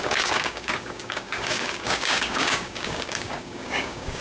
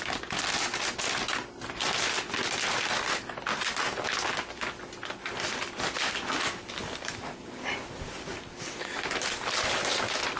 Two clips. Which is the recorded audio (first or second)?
second